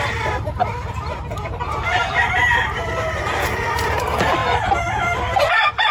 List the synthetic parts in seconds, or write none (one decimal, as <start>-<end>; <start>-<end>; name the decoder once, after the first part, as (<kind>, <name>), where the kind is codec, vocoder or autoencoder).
0.0-4.4 (vocoder, BigVGAN v2); 5.0-5.9